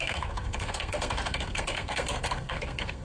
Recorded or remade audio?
remade